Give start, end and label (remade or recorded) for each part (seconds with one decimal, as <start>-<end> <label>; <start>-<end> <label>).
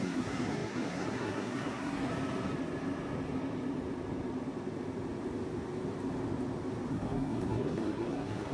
0.0-2.1 remade; 2.1-6.9 recorded; 6.9-8.5 remade